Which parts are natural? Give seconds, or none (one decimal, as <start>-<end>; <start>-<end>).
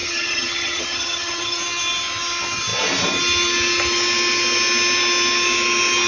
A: 1.6-6.1